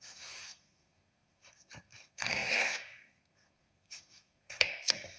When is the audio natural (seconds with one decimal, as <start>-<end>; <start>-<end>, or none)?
none